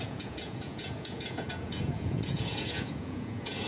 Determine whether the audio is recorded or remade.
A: remade